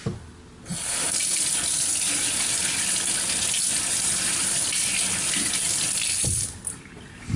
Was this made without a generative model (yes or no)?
yes